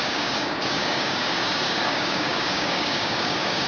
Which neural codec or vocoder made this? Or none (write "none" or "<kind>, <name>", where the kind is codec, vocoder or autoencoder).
codec, DAC